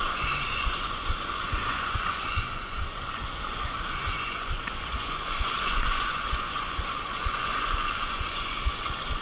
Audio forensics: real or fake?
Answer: fake